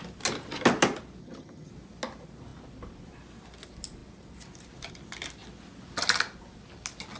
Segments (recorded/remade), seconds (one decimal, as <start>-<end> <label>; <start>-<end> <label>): 0.0-1.2 recorded; 1.2-1.7 remade; 1.7-7.2 recorded